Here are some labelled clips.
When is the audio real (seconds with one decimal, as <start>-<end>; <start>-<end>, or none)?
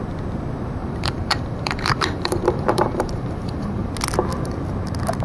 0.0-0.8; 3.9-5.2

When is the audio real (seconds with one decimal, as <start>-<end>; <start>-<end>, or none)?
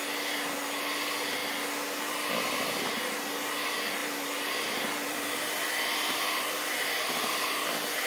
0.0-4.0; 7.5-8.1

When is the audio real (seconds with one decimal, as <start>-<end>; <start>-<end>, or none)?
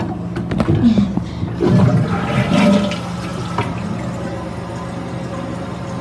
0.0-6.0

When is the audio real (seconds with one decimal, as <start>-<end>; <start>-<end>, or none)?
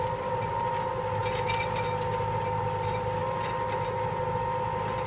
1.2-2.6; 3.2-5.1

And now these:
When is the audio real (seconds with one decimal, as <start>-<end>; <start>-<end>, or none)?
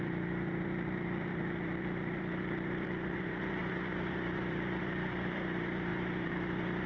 none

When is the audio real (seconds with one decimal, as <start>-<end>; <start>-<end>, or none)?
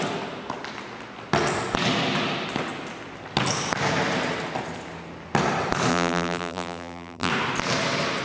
0.0-5.9; 7.3-8.2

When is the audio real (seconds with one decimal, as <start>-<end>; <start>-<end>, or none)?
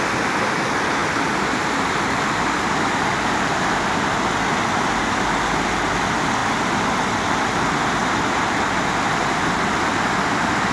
0.0-6.4; 7.3-10.7